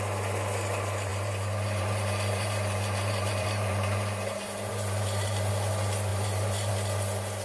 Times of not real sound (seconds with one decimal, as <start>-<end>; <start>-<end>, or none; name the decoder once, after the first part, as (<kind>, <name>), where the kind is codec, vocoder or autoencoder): 1.1-5.5 (vocoder, BigVGAN v2); 6.1-6.7